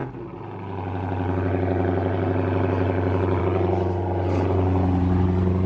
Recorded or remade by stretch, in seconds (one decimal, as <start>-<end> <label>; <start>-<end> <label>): 0.0-5.7 recorded